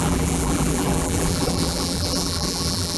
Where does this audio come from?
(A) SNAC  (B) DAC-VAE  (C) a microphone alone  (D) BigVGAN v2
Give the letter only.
D